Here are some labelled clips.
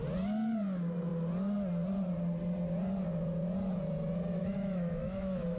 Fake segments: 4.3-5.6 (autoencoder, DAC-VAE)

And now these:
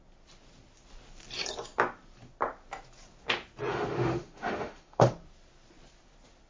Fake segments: 3.7-5.1 (autoencoder, DAC-VAE)

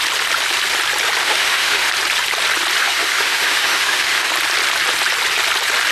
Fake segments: 1.2-1.9 (autoencoder, DAC-VAE); 2.8-4.3